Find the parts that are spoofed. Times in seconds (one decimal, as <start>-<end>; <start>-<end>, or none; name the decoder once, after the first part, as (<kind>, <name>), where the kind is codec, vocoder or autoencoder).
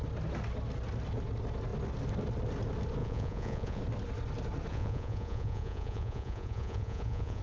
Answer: 3.0-3.8 (vocoder, Vocos); 4.7-7.4